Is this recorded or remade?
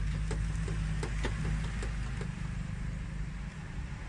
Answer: recorded